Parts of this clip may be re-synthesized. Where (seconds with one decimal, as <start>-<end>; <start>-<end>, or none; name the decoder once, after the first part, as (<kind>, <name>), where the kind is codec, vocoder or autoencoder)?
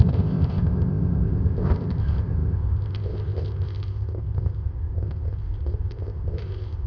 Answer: 0.0-6.9 (codec, ZipCodec)